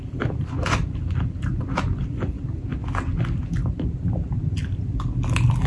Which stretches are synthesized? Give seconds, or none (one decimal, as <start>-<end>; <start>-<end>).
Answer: 0.0-2.7; 4.6-5.7